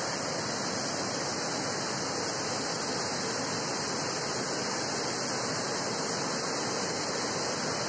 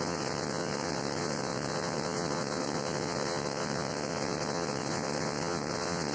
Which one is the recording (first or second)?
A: first